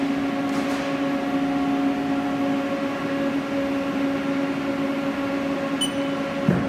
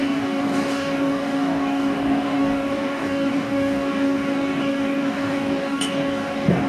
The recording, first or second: first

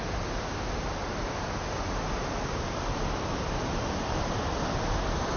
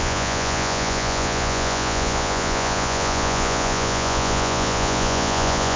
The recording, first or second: first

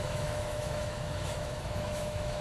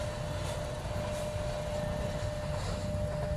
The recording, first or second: second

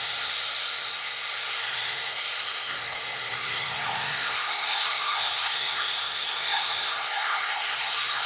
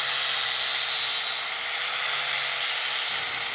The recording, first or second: second